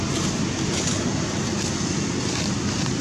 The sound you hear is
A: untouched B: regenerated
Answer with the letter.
A